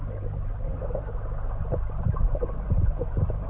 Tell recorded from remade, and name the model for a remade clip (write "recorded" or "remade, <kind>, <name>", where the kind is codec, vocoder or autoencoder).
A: recorded